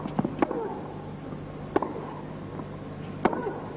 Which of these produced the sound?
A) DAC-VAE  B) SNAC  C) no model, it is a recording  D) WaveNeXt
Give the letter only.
C